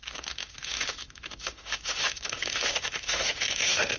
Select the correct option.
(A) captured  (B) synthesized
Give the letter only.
B